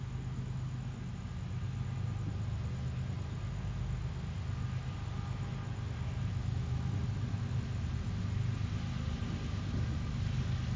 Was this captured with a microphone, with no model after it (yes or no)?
yes